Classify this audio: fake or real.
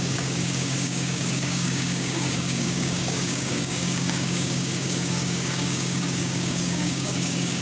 fake